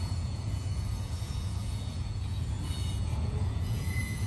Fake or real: fake